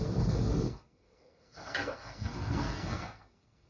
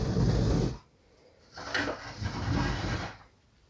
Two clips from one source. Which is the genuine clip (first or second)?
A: second